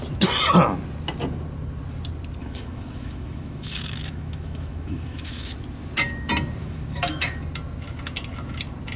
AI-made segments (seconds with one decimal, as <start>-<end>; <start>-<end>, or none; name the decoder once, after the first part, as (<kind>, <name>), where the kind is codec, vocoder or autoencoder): 2.4-5.5 (autoencoder, DAC-VAE); 6.6-7.4